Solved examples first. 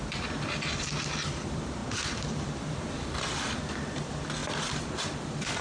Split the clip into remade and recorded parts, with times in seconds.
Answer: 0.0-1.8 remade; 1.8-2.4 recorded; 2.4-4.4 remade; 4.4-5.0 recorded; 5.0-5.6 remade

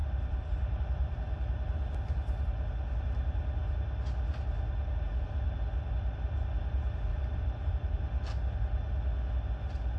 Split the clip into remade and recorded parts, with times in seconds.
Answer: 0.0-0.8 remade; 0.8-7.1 recorded; 7.1-7.7 remade; 7.7-10.0 recorded

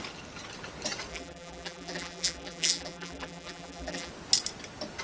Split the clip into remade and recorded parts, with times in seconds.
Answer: 0.0-1.1 recorded; 1.1-4.1 remade; 4.1-5.0 recorded

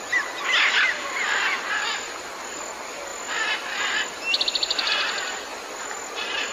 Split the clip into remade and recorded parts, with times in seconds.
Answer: 0.0-6.5 recorded

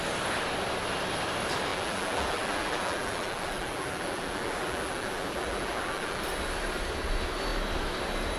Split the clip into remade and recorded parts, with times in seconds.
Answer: 0.0-1.7 recorded; 1.7-6.2 remade; 6.2-8.4 recorded